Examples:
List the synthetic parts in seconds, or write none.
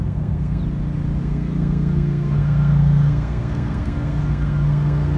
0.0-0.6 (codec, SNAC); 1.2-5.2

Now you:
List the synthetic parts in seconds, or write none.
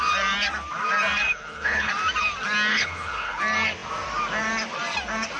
1.3-1.9 (codec, HILCodec); 2.7-3.4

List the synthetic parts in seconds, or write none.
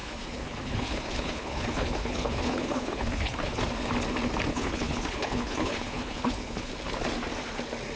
0.0-3.6 (codec, HILCodec); 4.5-6.7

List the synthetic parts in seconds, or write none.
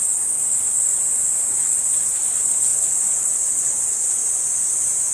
0.0-0.9 (codec, HILCodec); 1.5-4.2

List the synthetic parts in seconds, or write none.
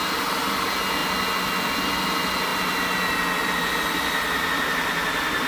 none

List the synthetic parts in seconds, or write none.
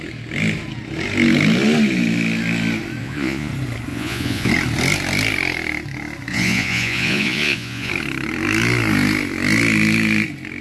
3.0-3.5 (vocoder, Vocos); 3.9-4.5; 6.3-7.9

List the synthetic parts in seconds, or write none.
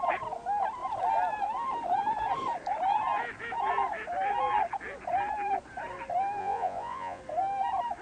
6.4-7.2 (vocoder, Vocos)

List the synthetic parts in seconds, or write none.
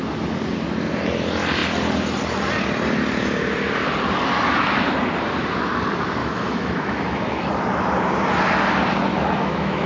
6.2-7.5 (autoencoder, DAC-VAE); 9.1-9.9